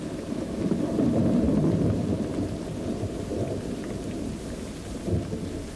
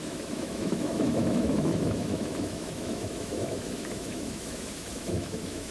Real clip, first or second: first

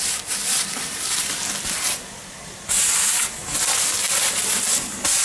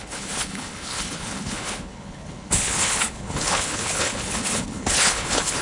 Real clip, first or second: first